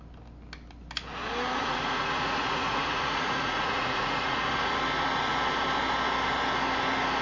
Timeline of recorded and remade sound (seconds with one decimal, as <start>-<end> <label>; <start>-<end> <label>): 0.0-1.6 recorded; 1.6-4.7 remade; 4.7-7.2 recorded